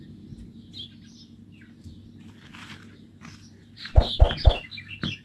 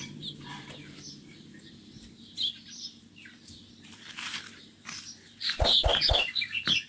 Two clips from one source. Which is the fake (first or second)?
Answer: second